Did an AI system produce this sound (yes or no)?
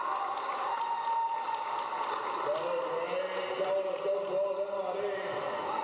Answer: no